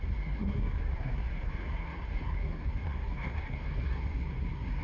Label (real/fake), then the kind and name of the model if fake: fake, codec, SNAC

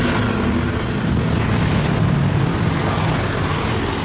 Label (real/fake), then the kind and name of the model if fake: real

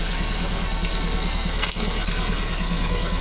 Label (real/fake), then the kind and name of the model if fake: fake, codec, SNAC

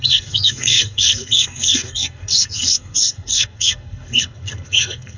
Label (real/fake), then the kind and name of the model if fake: fake, codec, SNAC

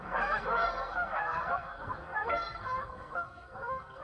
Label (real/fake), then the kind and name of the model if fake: fake, codec, SNAC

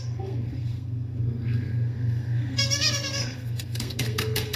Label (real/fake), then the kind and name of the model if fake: fake, codec, SNAC